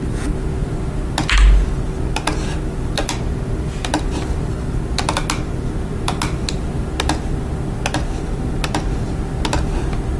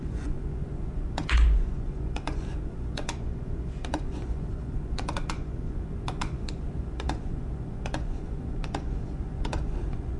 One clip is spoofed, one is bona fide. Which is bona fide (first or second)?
first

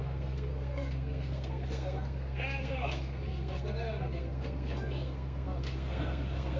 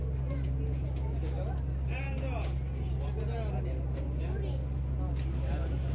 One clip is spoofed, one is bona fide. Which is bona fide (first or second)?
second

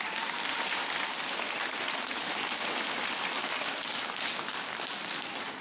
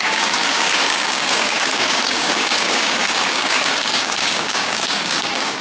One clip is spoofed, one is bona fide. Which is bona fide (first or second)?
first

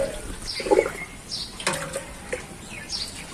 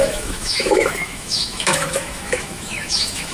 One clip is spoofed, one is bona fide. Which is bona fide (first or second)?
first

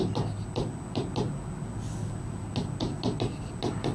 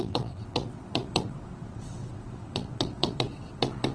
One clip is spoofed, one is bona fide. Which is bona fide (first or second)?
first